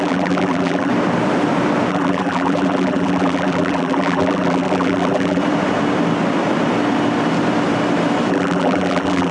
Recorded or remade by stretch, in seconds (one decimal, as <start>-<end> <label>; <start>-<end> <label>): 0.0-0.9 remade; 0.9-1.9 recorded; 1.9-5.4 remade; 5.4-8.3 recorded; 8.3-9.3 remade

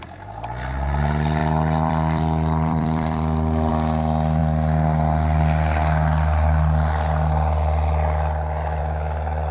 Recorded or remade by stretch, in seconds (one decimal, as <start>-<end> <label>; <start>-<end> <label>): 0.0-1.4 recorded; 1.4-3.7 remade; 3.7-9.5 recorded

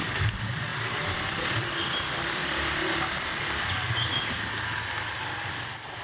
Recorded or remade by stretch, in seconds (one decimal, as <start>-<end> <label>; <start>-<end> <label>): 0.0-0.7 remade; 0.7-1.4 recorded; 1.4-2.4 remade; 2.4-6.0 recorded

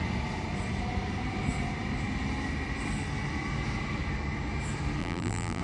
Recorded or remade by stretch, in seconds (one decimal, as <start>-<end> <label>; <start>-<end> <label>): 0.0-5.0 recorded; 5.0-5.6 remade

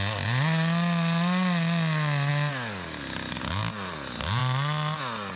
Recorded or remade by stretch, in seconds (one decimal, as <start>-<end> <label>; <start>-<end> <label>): 0.0-5.4 recorded